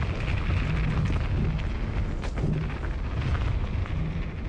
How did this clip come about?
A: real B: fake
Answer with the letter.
A